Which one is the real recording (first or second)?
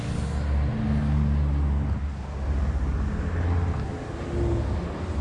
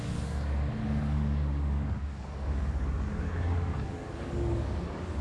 first